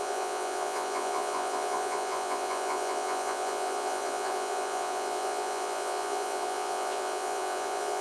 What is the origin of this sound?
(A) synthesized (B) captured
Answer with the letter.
A